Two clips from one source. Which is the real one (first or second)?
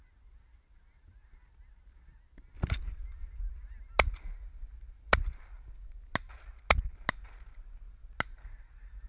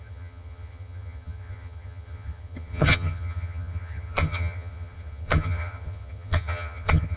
first